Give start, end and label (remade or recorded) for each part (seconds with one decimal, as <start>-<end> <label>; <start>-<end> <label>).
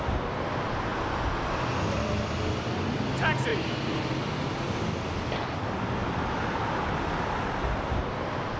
0.0-8.6 recorded